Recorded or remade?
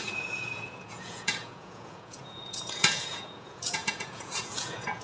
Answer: remade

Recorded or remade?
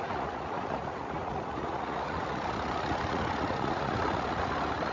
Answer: remade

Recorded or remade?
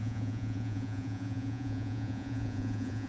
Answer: remade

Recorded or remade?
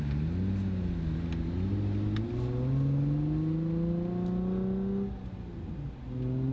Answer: recorded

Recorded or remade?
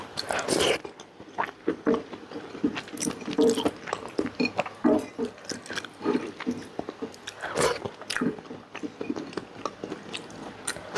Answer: recorded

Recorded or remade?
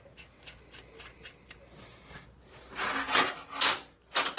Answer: recorded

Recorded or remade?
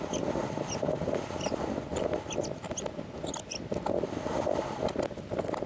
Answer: recorded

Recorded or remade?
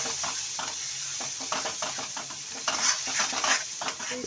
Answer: recorded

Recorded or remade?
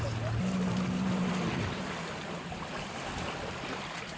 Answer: recorded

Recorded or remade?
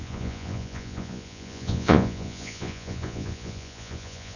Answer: remade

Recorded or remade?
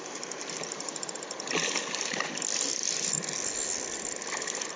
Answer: recorded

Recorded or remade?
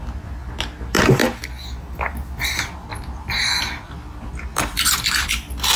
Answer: recorded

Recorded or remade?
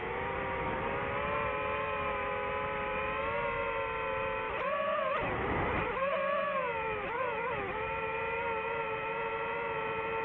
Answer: recorded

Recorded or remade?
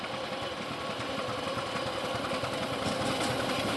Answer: recorded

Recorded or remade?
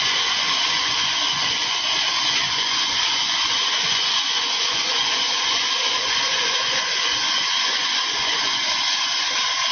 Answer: remade